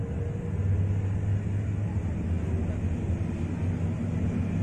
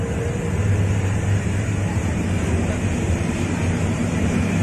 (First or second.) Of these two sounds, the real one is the first